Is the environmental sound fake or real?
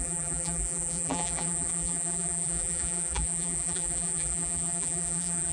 fake